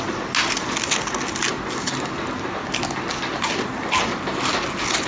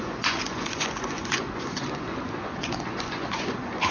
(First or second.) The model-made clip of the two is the second